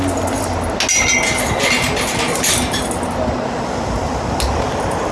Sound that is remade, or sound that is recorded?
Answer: recorded